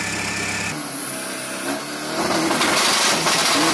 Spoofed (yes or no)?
no